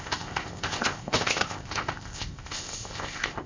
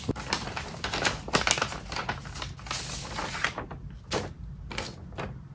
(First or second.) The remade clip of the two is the first